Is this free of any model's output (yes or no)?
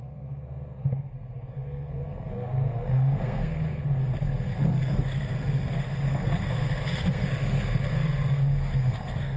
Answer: no